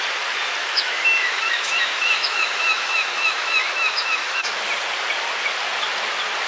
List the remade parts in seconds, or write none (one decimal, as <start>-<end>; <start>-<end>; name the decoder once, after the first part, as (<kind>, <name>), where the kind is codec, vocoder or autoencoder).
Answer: 0.6-4.5 (autoencoder, DAC-VAE)